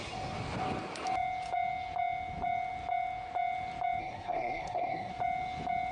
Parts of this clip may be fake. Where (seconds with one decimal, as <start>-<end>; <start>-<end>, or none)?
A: 4.0-5.1